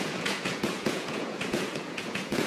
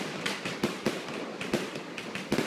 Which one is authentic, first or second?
second